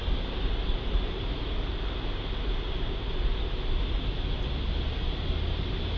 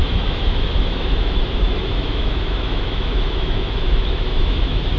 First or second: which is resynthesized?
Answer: second